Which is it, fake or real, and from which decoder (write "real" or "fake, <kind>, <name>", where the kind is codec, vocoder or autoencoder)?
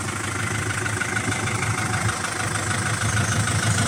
real